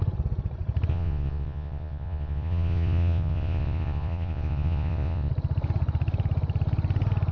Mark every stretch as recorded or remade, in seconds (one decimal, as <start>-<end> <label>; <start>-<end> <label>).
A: 0.0-0.9 recorded; 0.9-5.3 remade; 5.3-7.3 recorded